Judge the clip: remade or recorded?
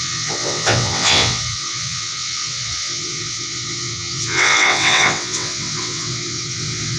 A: remade